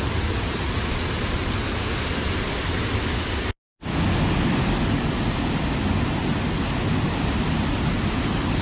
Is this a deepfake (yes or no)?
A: no